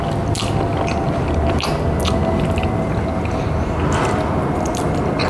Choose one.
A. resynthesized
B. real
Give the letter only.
B